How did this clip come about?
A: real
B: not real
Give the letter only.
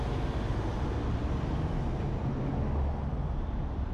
A